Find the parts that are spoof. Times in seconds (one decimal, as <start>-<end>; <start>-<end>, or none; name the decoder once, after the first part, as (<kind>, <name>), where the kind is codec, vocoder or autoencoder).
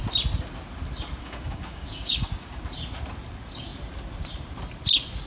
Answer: 1.2-2.6 (codec, DAC)